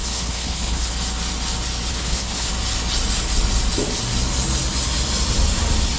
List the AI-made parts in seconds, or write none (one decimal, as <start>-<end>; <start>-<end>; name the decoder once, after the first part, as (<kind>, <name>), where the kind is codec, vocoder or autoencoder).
0.0-0.9 (codec, HILCodec); 1.9-2.5